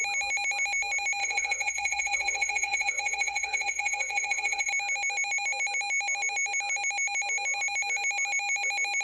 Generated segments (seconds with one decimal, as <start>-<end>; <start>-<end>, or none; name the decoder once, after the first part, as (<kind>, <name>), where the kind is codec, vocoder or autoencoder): 1.2-4.7 (vocoder, WaveNeXt)